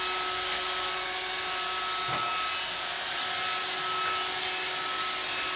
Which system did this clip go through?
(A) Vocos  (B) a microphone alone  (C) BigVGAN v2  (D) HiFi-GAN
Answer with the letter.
B